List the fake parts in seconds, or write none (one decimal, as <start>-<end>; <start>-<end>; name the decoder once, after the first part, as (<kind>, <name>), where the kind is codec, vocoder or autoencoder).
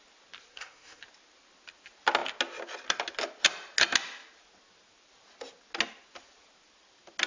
0.5-1.0 (codec, SNAC)